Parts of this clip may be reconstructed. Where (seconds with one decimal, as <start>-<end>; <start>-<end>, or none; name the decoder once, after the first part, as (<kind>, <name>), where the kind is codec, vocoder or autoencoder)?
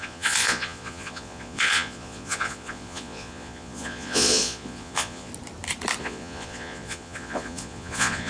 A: 0.0-5.3 (vocoder, Vocos); 6.0-8.3